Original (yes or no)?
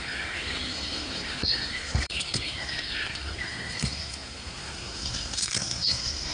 no